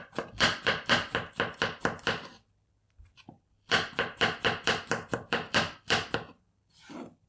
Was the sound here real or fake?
fake